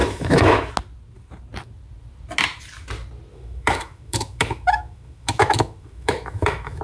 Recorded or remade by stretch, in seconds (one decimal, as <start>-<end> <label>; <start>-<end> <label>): 0.0-0.7 remade; 0.7-3.3 recorded; 3.3-6.8 remade